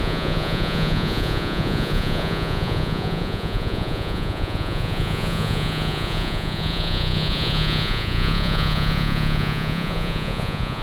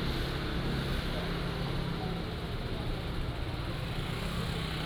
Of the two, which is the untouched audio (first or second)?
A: second